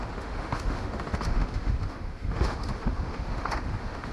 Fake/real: fake